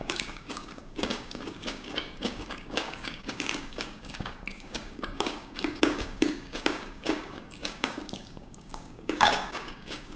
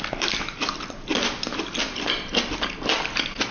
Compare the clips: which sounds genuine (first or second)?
second